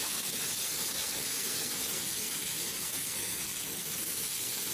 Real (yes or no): no